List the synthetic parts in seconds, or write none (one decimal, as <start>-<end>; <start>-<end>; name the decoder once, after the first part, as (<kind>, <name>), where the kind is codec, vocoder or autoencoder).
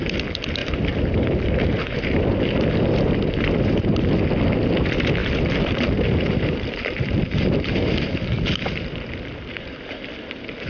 0.6-2.7 (vocoder, BigVGAN v2); 5.2-8.5